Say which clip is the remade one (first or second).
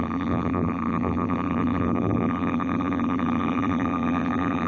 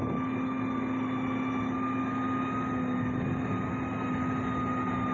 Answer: first